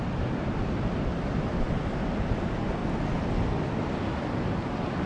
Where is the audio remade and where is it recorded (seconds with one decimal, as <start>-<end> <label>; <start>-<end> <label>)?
0.0-2.8 recorded; 2.8-3.7 remade; 3.7-5.1 recorded